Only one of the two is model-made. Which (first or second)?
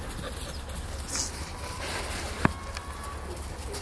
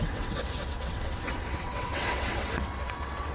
second